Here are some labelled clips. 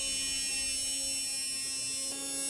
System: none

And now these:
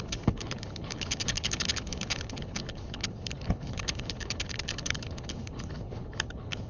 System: codec, HILCodec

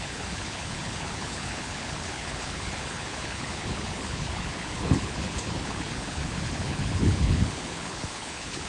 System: codec, HILCodec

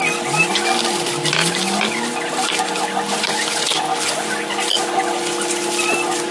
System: none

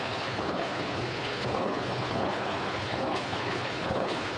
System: codec, HILCodec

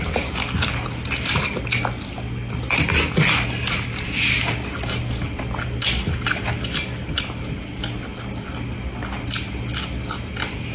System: none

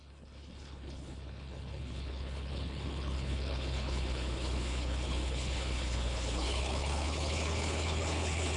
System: codec, HILCodec